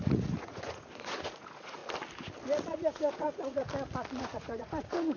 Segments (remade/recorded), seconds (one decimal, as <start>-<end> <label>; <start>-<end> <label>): 0.0-1.8 remade; 1.8-2.7 recorded; 2.7-3.6 remade; 3.6-4.2 recorded; 4.2-5.2 remade